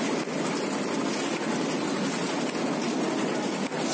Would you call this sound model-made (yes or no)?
no